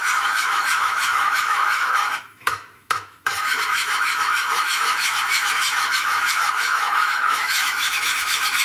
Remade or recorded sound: remade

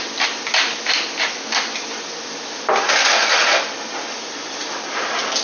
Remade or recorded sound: recorded